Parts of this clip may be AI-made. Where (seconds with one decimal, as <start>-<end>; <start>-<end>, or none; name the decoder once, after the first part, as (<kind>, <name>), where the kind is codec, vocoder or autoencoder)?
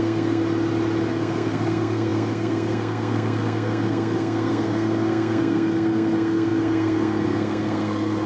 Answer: 0.0-0.4 (codec, SNAC); 1.1-8.3